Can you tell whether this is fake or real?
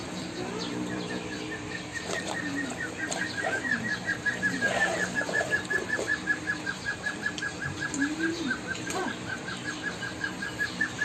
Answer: fake